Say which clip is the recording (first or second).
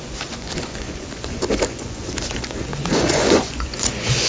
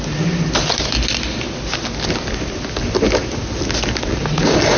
second